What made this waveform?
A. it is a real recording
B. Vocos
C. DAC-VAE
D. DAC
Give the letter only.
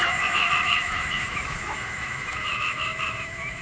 C